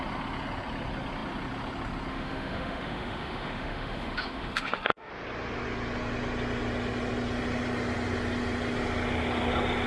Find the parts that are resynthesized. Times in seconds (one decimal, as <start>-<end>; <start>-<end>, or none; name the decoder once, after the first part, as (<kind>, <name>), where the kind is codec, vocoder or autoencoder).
2.1-5.1 (autoencoder, DAC-VAE)